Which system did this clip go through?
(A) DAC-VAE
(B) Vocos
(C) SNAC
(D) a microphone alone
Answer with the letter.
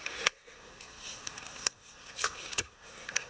C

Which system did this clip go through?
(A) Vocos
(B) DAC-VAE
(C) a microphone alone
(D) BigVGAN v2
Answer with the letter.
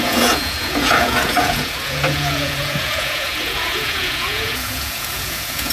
A